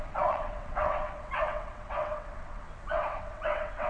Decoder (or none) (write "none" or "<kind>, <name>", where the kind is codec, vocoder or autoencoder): vocoder, WaveNeXt